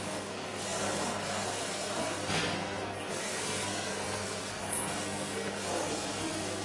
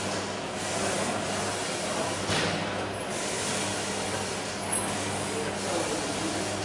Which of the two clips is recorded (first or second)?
second